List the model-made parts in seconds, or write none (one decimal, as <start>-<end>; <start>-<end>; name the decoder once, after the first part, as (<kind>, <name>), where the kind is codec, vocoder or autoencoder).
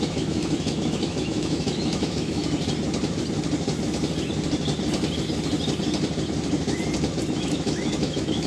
0.0-2.4 (autoencoder, DAC-VAE); 7.4-8.5